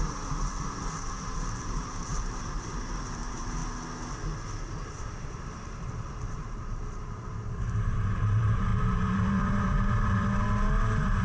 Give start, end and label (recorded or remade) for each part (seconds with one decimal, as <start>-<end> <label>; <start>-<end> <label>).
0.0-3.6 remade; 3.6-4.9 recorded; 4.9-11.2 remade